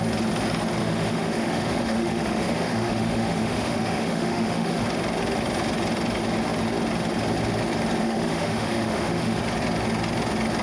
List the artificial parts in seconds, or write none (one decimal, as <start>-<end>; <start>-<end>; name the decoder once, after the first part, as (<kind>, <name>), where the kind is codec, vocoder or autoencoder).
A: 0.8-4.8 (autoencoder, DAC-VAE); 8.0-9.4